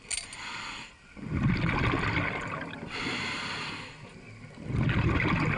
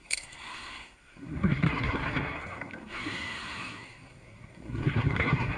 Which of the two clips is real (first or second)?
first